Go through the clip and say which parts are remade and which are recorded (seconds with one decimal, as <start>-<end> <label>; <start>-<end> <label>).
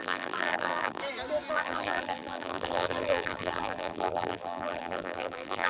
0.0-1.0 remade; 1.0-1.5 recorded; 1.5-5.7 remade